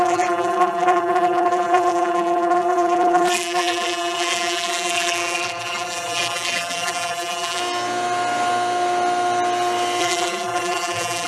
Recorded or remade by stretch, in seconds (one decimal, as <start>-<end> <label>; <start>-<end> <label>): 0.0-7.6 remade; 7.6-10.0 recorded; 10.0-11.3 remade